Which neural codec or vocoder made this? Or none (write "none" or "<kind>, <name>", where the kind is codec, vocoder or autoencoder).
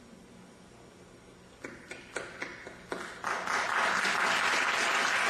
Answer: none